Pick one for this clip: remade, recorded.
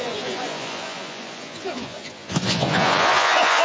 remade